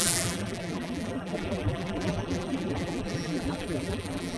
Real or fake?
fake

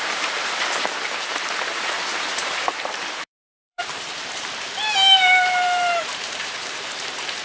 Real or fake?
fake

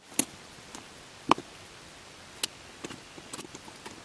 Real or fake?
real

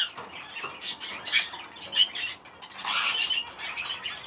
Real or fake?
real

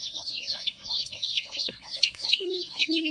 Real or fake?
fake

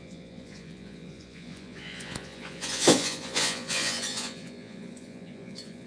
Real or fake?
fake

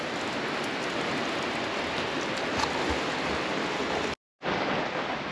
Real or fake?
real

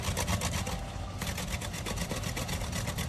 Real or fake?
real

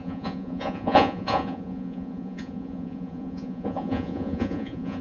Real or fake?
fake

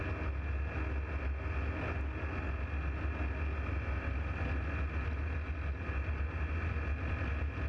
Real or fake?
real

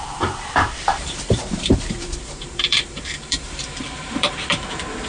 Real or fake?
fake